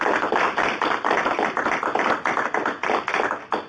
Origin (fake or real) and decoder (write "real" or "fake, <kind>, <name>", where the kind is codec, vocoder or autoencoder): real